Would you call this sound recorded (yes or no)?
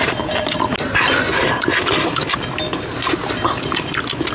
yes